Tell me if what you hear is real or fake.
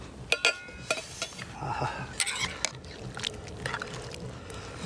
real